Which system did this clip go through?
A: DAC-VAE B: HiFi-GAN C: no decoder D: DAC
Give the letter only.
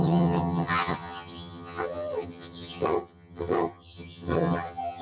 B